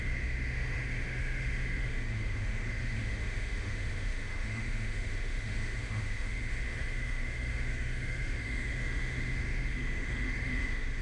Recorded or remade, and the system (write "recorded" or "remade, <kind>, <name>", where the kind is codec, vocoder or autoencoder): remade, autoencoder, DAC-VAE